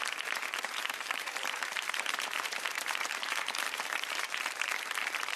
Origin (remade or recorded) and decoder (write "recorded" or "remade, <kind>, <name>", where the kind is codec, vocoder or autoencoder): remade, vocoder, BigVGAN v2